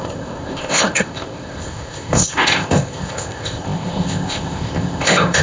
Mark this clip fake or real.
fake